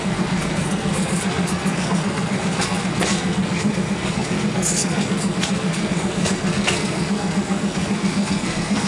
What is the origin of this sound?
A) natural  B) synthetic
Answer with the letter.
B